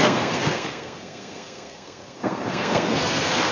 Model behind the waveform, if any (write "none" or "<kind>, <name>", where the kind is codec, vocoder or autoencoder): codec, SNAC